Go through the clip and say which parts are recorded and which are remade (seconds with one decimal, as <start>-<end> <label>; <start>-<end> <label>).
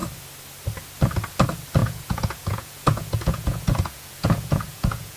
0.0-1.8 recorded; 1.8-5.2 remade